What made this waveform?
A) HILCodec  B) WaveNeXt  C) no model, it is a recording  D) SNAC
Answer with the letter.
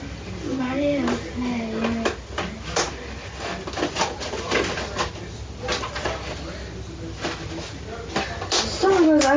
C